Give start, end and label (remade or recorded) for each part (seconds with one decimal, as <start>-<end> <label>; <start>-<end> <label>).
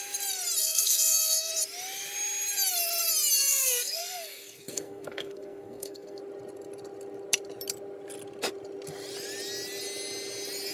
0.0-0.6 recorded; 0.6-1.5 remade; 1.5-3.5 recorded; 3.5-6.2 remade; 6.2-10.7 recorded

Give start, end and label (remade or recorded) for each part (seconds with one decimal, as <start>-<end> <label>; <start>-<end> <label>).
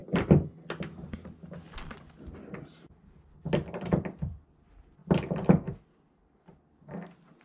0.0-7.4 recorded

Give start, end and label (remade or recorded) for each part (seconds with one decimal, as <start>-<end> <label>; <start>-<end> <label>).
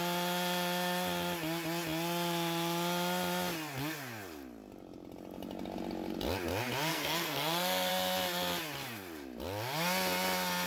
0.0-6.9 recorded; 6.9-7.9 remade; 7.9-10.7 recorded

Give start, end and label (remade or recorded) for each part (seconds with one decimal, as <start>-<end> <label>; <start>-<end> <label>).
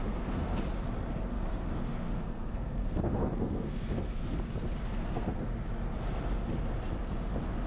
0.0-0.6 remade; 0.6-1.3 recorded; 1.3-4.4 remade; 4.4-5.0 recorded; 5.0-5.5 remade; 5.5-7.7 recorded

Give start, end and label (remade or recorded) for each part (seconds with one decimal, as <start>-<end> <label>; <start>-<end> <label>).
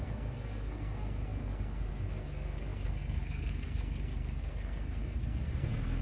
0.0-6.0 remade